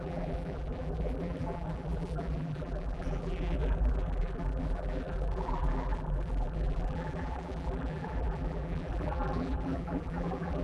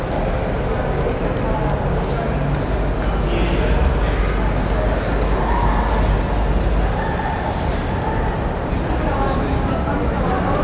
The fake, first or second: first